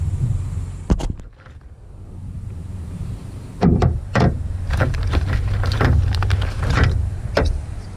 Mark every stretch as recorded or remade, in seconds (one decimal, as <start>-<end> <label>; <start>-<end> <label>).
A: 0.0-1.0 remade; 1.0-2.2 recorded; 2.2-8.0 remade

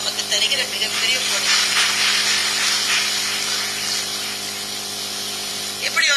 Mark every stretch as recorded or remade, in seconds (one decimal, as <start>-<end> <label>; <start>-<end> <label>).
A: 0.0-6.2 recorded

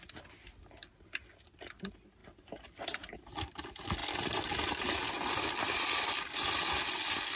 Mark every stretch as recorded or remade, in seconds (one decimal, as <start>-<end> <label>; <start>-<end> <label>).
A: 0.0-4.0 recorded; 4.0-6.1 remade; 6.1-7.3 recorded

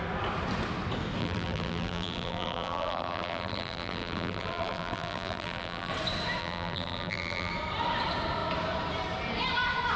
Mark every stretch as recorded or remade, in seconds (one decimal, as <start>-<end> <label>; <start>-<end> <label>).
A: 0.0-1.2 recorded; 1.2-5.9 remade; 5.9-6.4 recorded; 6.4-7.5 remade; 7.5-10.0 recorded

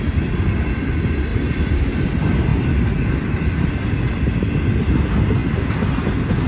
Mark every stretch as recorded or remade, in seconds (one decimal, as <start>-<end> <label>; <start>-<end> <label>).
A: 0.0-1.3 recorded; 1.3-2.1 remade; 2.1-6.5 recorded

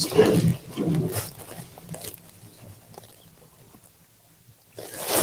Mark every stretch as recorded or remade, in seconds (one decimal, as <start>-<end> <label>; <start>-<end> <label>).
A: 0.0-5.2 recorded

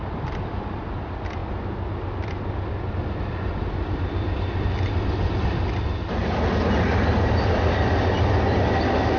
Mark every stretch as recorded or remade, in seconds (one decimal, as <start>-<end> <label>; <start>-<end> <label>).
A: 0.0-9.2 recorded